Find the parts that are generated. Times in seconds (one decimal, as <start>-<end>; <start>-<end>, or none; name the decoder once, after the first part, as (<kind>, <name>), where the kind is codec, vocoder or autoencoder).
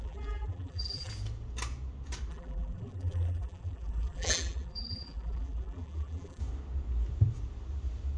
0.0-1.1 (vocoder, BigVGAN v2); 2.3-6.4